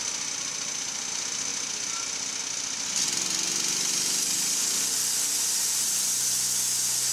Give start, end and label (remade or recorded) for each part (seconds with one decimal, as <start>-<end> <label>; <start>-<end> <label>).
0.0-7.1 recorded